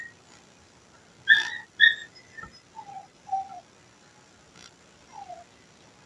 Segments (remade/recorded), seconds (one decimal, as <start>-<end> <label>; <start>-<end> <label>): 0.0-6.1 recorded